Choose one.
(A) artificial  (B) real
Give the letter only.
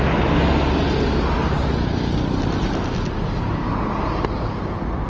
B